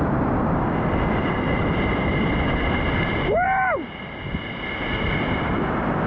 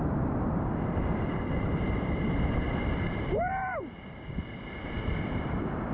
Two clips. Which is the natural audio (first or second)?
first